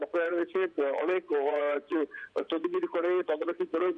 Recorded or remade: remade